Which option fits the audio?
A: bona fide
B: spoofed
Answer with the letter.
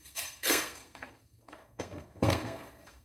B